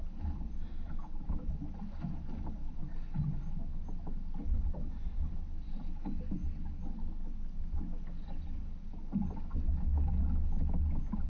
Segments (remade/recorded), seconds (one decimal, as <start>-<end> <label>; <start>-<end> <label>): 0.0-11.3 recorded